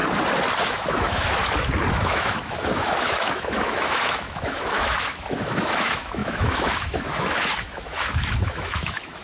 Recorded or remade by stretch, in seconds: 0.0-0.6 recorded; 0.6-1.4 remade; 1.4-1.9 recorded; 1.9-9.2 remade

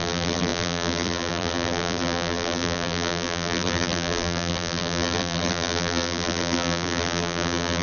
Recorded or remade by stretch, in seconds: 0.0-7.8 remade

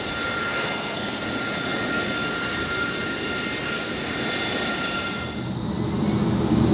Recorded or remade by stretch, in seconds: 0.0-0.4 recorded; 0.4-1.2 remade; 1.2-6.7 recorded

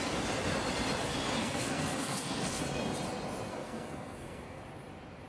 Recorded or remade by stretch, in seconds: 0.0-1.4 recorded; 1.4-2.6 remade; 2.6-3.5 recorded; 3.5-4.6 remade; 4.6-5.3 recorded

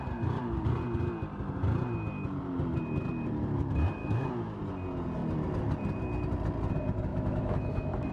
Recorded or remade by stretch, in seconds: 0.0-4.0 recorded; 4.0-4.6 remade; 4.6-7.1 recorded; 7.1-8.1 remade